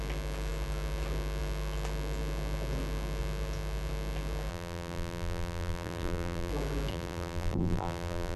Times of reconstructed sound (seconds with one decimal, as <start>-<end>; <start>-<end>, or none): 4.5-6.5; 6.9-8.4